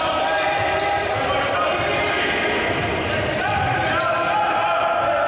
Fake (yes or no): no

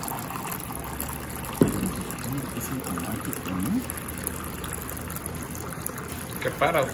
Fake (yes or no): no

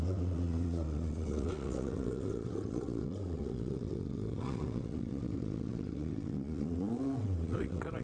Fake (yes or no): yes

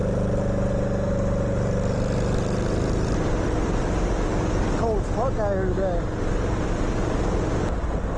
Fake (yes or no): no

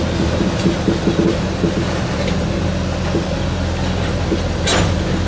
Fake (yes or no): no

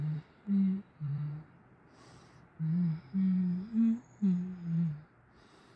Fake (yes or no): yes